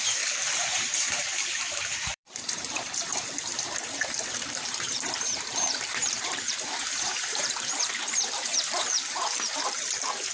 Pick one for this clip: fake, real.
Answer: fake